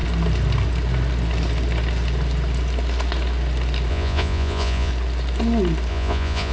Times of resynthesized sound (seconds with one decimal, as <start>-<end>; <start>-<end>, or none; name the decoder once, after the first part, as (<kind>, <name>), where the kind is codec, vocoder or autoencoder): 3.9-4.9 (vocoder, Vocos); 5.9-6.5